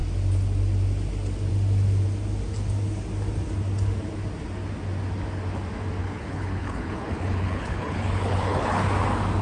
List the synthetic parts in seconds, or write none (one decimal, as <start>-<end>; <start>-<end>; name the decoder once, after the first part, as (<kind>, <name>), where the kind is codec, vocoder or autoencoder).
6.0-8.8 (codec, HILCodec)